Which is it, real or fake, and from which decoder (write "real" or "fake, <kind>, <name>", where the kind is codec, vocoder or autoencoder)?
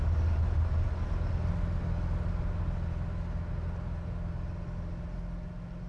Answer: real